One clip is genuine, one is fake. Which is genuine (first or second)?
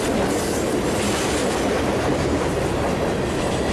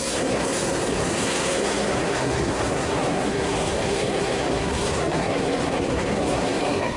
first